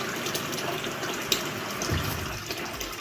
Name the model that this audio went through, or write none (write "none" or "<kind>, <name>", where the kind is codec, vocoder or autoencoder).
none